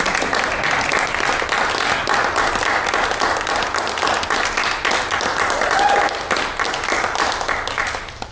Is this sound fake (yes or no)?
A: no